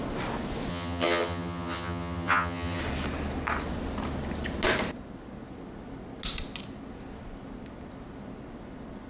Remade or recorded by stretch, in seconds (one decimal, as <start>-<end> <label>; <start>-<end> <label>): 0.0-0.7 recorded; 0.7-2.8 remade; 2.8-9.1 recorded